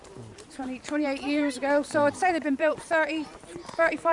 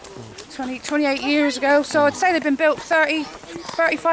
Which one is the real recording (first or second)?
second